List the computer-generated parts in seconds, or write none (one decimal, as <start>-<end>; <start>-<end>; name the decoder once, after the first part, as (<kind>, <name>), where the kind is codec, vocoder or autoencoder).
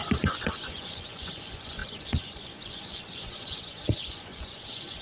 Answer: 0.0-5.0 (vocoder, Vocos)